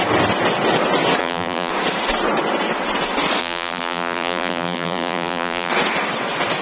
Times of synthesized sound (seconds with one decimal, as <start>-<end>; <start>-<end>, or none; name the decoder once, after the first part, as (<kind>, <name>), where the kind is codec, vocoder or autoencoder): 1.2-1.7 (vocoder, BigVGAN v2); 3.4-5.7

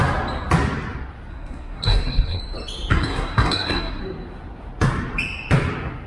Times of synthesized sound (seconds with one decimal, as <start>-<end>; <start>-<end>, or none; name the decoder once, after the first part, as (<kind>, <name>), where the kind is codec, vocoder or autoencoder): 1.3-2.4 (codec, SNAC); 2.9-4.0

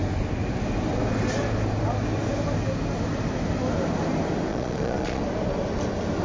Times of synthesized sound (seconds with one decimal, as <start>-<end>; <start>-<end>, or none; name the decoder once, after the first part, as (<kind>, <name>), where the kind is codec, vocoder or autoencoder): 4.5-5.2 (vocoder, Vocos)

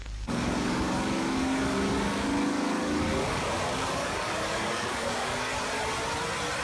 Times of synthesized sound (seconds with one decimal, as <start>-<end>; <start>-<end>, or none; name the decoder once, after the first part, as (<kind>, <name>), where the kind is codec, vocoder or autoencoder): 0.0-5.5 (codec, DAC)